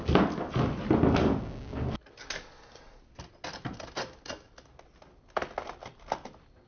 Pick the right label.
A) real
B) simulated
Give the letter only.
A